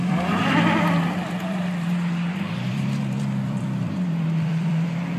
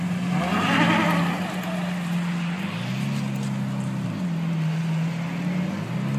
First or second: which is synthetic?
first